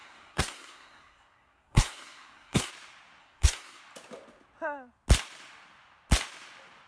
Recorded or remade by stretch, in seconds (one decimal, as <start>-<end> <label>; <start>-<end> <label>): 0.0-2.7 remade; 2.7-3.2 recorded; 3.2-3.8 remade; 3.8-6.9 recorded